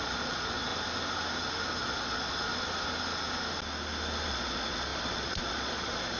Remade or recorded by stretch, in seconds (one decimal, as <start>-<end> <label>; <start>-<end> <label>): 0.0-0.7 remade; 0.7-1.8 recorded; 1.8-2.5 remade; 2.5-4.3 recorded; 4.3-6.2 remade